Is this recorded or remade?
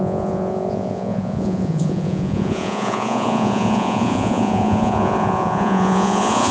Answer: remade